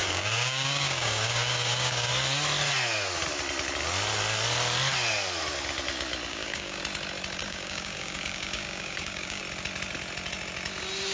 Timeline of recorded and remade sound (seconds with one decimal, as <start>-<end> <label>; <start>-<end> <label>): 0.0-2.1 remade; 2.1-6.3 recorded; 6.3-6.8 remade; 6.8-7.4 recorded; 7.4-9.4 remade; 9.4-11.1 recorded

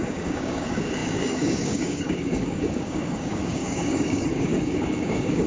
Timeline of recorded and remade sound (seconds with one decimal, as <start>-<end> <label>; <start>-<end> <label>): 0.0-5.5 remade

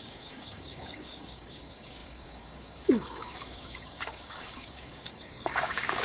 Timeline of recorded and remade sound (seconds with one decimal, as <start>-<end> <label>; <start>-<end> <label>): 0.0-6.0 remade

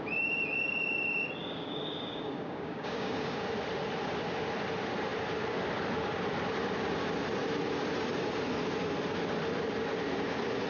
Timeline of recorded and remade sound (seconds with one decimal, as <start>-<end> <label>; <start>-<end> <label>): 0.0-1.4 recorded; 1.4-3.4 remade; 3.4-10.7 recorded